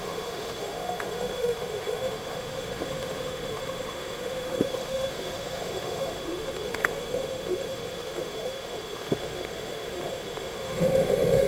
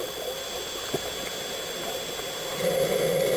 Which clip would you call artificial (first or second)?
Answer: first